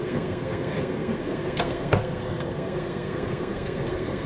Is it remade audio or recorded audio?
remade